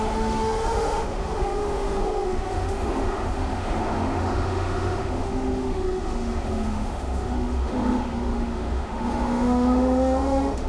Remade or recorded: remade